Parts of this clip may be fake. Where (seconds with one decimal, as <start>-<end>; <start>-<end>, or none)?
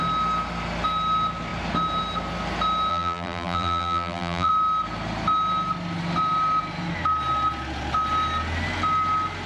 2.9-4.5